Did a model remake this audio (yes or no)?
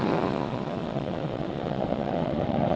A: yes